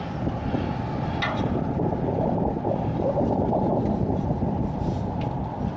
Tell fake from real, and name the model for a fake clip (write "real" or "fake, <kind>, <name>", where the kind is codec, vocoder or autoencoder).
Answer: real